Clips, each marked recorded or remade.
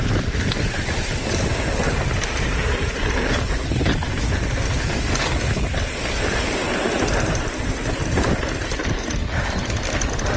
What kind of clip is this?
recorded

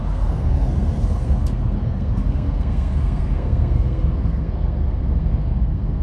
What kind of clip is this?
remade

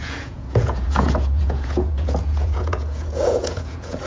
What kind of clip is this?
remade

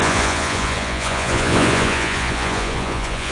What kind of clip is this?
remade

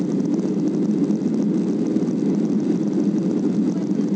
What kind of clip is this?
recorded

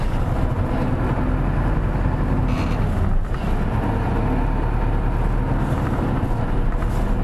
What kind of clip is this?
recorded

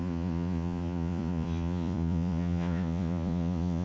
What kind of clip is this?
remade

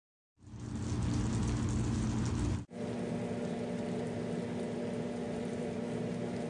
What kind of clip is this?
recorded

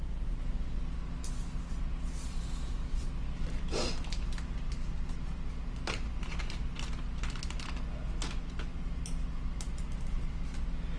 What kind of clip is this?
recorded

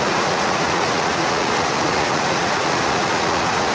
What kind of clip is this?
remade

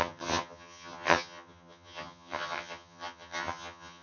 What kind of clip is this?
remade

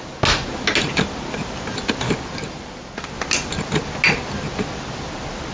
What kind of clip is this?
recorded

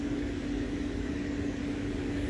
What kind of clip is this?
remade